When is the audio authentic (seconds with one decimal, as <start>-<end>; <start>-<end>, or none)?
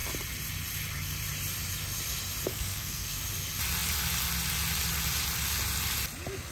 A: 0.0-2.5; 3.2-6.5